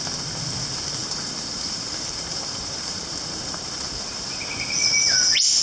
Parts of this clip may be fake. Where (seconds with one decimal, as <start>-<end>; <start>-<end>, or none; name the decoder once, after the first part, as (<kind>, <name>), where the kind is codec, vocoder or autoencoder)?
1.0-4.4 (vocoder, BigVGAN v2)

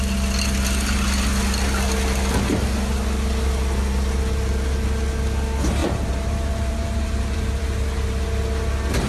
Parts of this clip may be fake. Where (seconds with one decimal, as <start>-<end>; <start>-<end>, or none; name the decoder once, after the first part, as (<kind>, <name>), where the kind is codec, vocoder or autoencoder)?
5.8-7.6 (vocoder, BigVGAN v2)

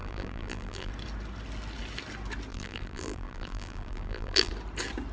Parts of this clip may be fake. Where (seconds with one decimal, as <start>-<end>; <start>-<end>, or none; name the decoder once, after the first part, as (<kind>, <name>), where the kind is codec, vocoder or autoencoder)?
0.0-0.9 (vocoder, BigVGAN v2); 2.5-4.5

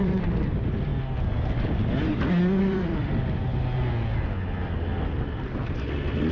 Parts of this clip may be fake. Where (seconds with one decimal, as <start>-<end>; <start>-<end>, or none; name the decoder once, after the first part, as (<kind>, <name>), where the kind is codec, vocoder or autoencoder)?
0.0-0.9 (vocoder, BigVGAN v2); 2.6-3.5